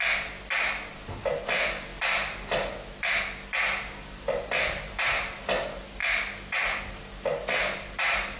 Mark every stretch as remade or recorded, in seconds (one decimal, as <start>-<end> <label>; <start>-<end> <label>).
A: 0.0-8.4 recorded